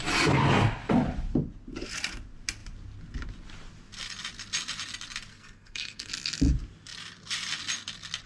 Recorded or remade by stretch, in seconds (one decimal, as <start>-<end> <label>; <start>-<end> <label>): 0.0-5.3 recorded; 5.3-6.1 remade; 6.1-8.3 recorded

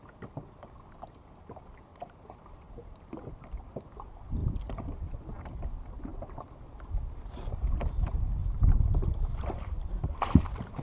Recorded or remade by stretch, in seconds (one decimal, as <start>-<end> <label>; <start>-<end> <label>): 0.0-1.9 recorded; 1.9-2.9 remade; 2.9-8.4 recorded; 8.4-10.1 remade; 10.1-10.8 recorded

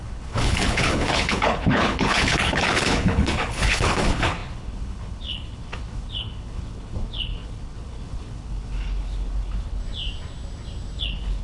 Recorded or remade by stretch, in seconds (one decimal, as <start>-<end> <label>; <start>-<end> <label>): 0.0-9.8 remade; 9.8-11.0 recorded; 11.0-11.4 remade

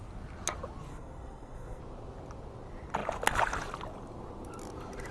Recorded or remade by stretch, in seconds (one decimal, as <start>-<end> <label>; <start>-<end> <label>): 0.0-0.9 recorded; 0.9-1.8 remade; 1.8-5.1 recorded